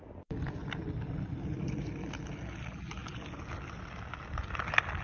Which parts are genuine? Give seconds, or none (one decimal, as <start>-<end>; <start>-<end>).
0.0-5.0